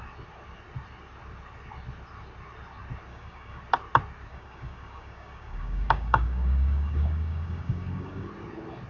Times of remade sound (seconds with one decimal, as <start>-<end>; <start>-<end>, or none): 3.1-3.6; 4.3-8.3